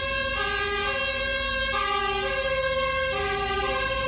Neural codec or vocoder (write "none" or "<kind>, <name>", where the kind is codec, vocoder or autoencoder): none